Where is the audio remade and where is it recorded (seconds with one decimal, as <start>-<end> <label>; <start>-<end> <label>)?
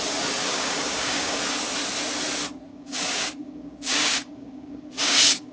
0.0-0.4 recorded; 0.4-1.4 remade; 1.4-2.7 recorded; 2.7-5.5 remade